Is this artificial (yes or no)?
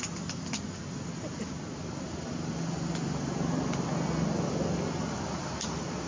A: no